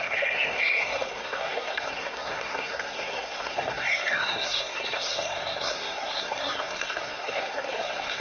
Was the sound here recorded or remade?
remade